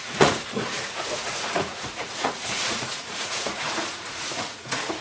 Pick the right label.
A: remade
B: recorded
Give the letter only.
A